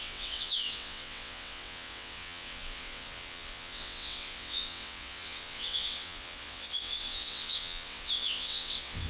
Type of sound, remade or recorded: remade